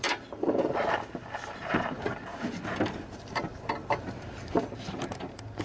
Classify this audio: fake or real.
fake